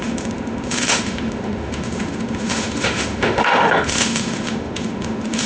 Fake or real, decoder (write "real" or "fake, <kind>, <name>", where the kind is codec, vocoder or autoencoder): fake, autoencoder, DAC-VAE